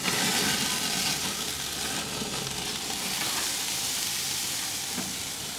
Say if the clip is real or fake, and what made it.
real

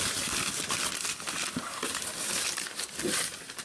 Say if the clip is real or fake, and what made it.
real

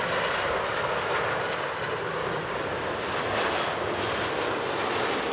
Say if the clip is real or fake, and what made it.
real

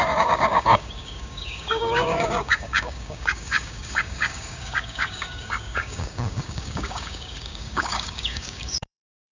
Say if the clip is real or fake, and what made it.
fake, codec, DAC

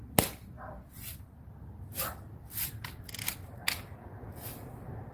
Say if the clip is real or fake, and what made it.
fake, vocoder, BigVGAN v2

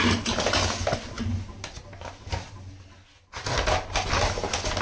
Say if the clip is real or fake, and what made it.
real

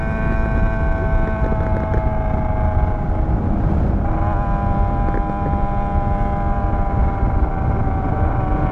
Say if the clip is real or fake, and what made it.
real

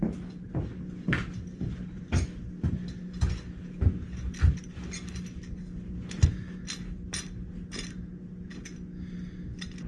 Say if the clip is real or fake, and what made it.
real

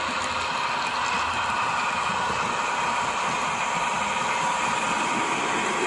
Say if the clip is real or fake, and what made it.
real